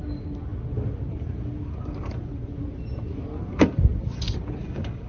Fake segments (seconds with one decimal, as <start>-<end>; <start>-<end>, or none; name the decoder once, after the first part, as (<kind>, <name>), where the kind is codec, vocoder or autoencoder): 4.6-5.1 (codec, DAC)